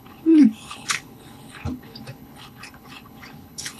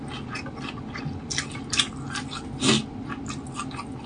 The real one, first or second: second